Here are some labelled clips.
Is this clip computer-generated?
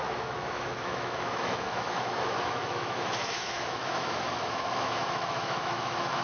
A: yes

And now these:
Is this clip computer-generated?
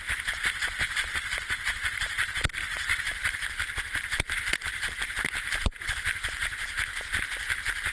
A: no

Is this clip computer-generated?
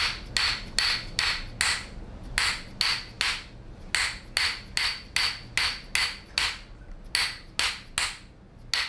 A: no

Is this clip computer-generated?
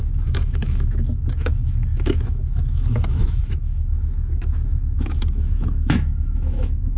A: yes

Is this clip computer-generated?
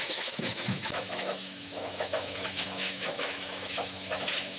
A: yes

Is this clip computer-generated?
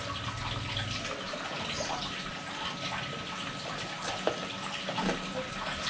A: no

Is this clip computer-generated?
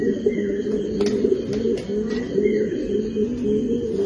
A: no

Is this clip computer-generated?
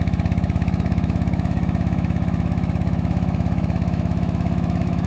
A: yes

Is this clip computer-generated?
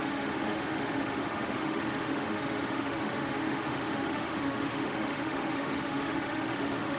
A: yes